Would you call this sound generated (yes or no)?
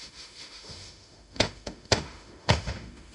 yes